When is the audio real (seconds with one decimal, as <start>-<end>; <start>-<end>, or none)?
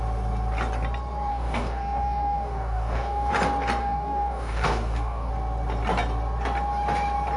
0.0-1.3; 3.3-3.8; 5.3-7.4